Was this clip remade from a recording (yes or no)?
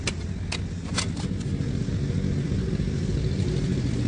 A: no